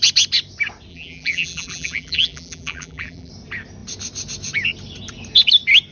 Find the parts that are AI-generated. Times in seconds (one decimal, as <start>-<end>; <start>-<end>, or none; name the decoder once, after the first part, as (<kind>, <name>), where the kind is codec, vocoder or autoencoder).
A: 0.9-3.3 (vocoder, BigVGAN v2)